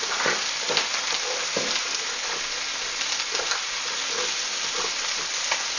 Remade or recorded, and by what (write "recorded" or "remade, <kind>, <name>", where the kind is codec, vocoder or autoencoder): recorded